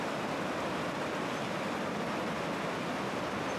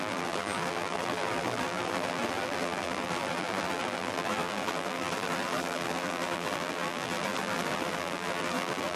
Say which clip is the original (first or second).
first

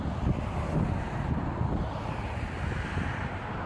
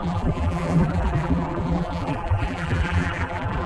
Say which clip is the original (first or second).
first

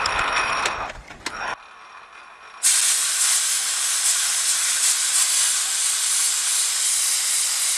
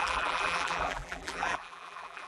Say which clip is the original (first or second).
first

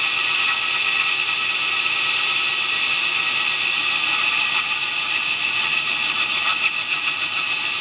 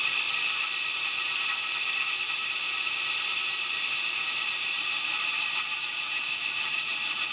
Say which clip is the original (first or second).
first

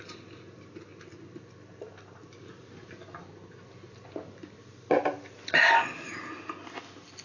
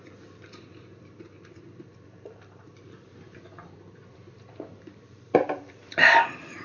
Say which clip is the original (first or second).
first